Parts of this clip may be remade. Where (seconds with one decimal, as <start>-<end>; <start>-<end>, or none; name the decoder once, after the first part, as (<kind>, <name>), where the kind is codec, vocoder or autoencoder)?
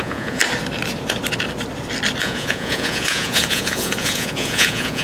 0.0-0.4 (vocoder, Vocos); 2.2-5.0